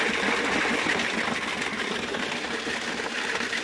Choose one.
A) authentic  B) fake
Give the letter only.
A